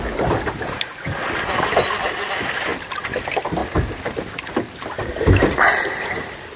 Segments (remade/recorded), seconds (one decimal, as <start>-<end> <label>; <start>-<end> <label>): 0.0-6.6 recorded